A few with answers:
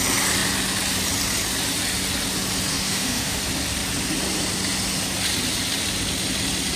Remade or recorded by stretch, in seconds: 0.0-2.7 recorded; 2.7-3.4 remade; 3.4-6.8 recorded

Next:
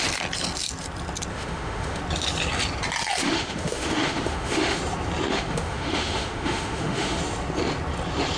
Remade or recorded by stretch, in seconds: 0.0-1.3 recorded; 1.3-2.0 remade; 2.0-3.2 recorded; 3.2-4.8 remade; 4.8-5.3 recorded; 5.3-7.2 remade; 7.2-8.4 recorded

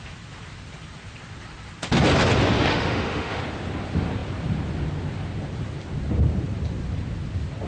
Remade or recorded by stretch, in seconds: 0.0-2.7 recorded; 2.7-3.4 remade; 3.4-7.7 recorded

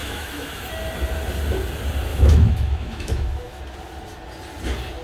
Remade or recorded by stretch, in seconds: 0.0-0.7 remade; 0.7-2.1 recorded; 2.1-3.6 remade; 3.6-5.0 recorded

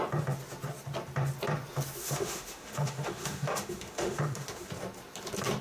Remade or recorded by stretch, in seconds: 0.0-2.0 recorded; 2.0-4.7 remade; 4.7-5.6 recorded

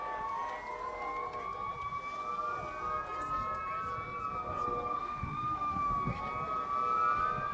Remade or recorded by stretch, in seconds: 0.0-5.0 recorded; 5.0-5.9 remade; 5.9-7.5 recorded

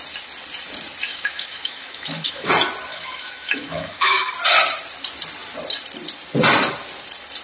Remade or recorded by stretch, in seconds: 0.0-1.1 recorded; 1.1-2.5 remade; 2.5-2.9 recorded; 2.9-4.3 remade; 4.3-7.4 recorded